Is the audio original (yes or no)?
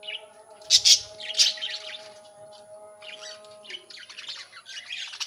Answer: yes